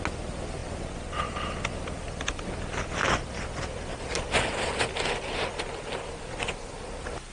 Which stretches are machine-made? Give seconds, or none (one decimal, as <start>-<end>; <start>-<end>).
none